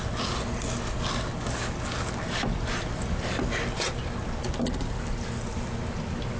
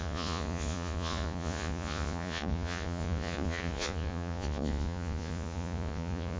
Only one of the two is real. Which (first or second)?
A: first